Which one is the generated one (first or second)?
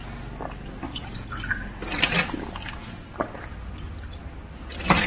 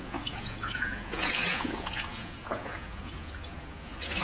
second